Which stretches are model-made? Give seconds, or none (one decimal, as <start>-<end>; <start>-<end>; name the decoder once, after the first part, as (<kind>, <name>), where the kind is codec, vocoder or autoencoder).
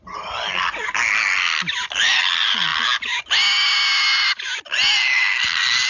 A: none